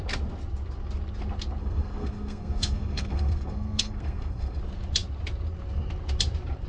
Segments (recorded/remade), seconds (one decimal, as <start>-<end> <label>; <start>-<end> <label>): 0.0-1.6 recorded; 1.6-4.6 remade; 4.6-6.7 recorded